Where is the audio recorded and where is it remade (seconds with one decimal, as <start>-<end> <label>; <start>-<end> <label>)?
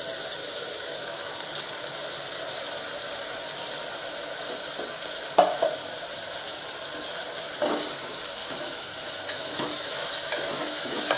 0.0-0.4 recorded; 0.4-1.3 remade; 1.3-8.4 recorded; 8.4-11.2 remade